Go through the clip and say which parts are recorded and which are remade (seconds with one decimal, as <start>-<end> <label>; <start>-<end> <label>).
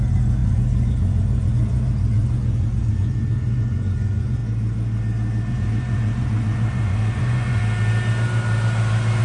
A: 0.0-4.4 remade; 4.4-5.5 recorded; 5.5-7.6 remade; 7.6-9.2 recorded